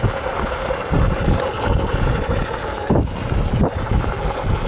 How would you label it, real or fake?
real